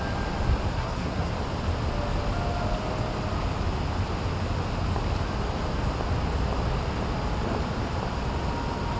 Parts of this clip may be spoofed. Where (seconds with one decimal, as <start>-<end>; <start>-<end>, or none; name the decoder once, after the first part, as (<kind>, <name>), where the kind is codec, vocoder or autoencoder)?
0.7-1.3 (codec, SNAC)

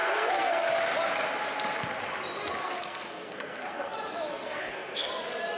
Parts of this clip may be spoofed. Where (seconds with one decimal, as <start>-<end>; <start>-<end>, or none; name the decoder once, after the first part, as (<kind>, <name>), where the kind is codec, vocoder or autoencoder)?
0.0-0.7 (codec, SNAC); 2.6-3.9; 4.3-5.1

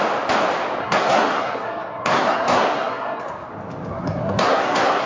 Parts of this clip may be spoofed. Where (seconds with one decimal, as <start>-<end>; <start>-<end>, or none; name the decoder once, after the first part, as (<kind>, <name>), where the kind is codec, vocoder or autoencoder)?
0.8-3.5 (codec, SNAC); 3.9-5.1